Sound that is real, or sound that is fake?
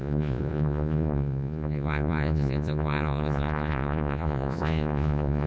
fake